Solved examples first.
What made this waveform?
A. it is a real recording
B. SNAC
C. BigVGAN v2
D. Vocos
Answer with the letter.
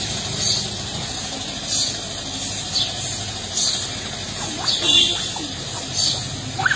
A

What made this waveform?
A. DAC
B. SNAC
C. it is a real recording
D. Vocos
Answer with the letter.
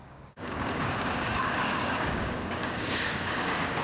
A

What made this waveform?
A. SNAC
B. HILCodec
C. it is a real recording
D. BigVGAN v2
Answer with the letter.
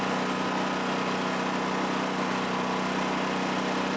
C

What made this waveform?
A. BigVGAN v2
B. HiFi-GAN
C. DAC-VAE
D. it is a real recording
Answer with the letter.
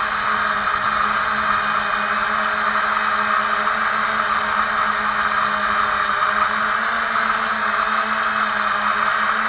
D